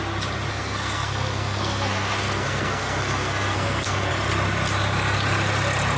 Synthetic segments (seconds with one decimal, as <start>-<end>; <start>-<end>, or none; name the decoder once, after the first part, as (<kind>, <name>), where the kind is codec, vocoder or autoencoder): 0.5-4.1 (codec, SNAC)